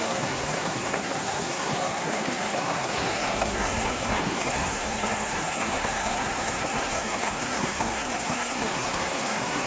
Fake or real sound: fake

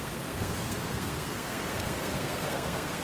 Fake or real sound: fake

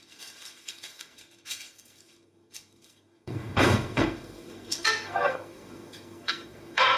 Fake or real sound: fake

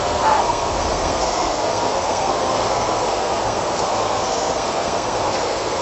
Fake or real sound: fake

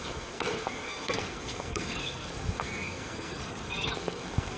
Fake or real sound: fake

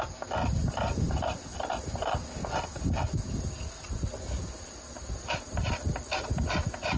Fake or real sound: real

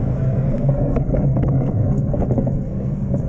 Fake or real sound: fake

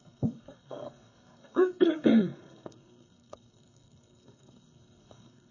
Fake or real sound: fake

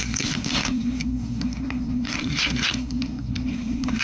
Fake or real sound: fake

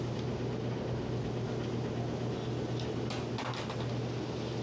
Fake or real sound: real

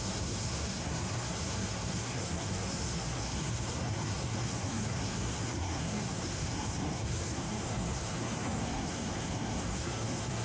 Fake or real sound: fake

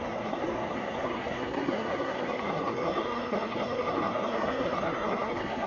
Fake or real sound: fake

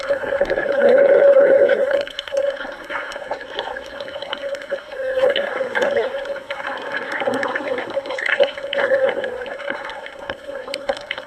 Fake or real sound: fake